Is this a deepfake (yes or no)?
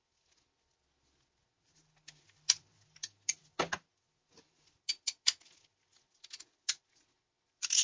no